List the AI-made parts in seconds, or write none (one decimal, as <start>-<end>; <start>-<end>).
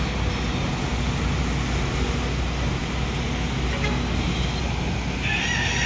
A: none